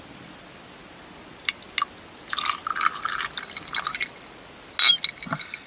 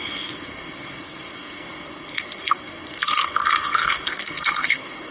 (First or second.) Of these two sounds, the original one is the first